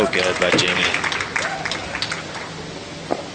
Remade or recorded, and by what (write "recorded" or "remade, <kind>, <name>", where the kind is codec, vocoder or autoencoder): recorded